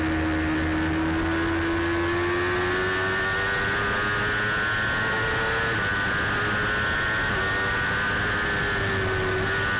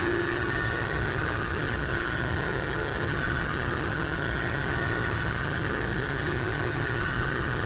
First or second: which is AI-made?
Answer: second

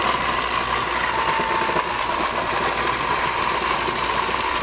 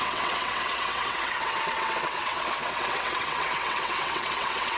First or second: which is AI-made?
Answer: second